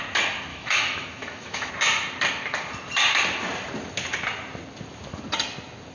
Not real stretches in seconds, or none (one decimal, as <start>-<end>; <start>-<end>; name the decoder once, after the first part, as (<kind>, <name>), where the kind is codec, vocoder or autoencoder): 0.5-1.7 (autoencoder, DAC-VAE)

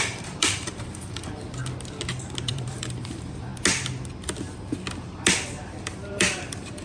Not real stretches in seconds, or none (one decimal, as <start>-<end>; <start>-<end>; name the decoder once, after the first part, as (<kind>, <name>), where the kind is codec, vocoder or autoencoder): 0.0-1.6 (vocoder, BigVGAN v2); 2.4-3.5; 5.8-6.8

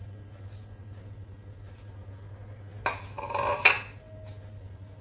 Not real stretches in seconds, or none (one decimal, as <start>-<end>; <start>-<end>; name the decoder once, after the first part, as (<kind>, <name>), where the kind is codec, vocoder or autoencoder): none

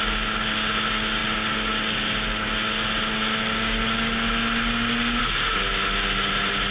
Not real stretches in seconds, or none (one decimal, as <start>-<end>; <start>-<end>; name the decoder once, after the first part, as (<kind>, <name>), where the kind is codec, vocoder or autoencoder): none

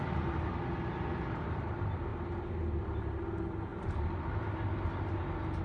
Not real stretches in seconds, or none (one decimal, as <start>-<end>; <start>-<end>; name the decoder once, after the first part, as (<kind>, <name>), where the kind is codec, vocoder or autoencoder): none

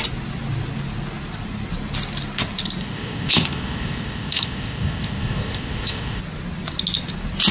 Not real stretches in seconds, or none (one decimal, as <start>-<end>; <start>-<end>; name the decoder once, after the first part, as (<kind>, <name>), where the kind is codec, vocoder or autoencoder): 2.8-6.2 (codec, ZipCodec)

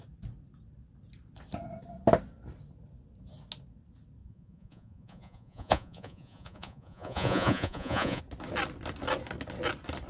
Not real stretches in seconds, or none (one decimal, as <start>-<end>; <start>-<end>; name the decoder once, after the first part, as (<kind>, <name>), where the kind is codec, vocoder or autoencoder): 4.2-8.2 (vocoder, Vocos)